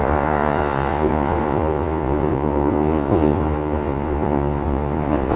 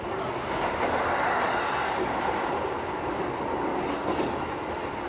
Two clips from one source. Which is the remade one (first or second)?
first